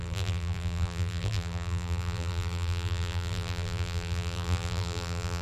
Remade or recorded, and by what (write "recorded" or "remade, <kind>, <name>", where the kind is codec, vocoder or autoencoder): remade, vocoder, BigVGAN v2